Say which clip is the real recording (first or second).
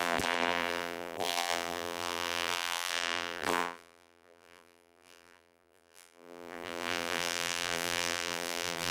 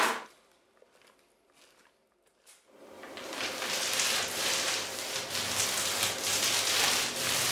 second